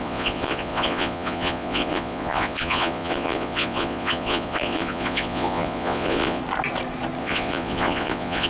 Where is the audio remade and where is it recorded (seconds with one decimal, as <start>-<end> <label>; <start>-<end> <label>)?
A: 0.0-6.4 remade; 6.4-7.2 recorded; 7.2-8.5 remade